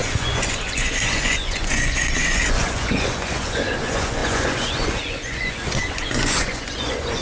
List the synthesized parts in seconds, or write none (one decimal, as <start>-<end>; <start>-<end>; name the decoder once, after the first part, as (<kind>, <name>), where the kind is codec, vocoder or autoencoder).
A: 0.0-7.2 (vocoder, Vocos)